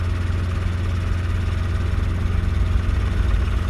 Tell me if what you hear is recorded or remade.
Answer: recorded